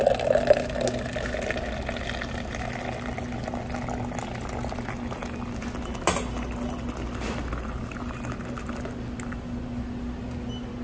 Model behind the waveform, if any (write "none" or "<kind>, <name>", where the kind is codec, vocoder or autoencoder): none